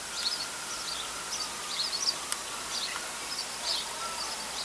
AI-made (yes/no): no